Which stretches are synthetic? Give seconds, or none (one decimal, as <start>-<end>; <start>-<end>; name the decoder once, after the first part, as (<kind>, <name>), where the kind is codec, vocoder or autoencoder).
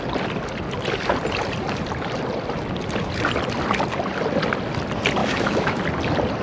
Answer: 5.2-5.8 (autoencoder, DAC-VAE)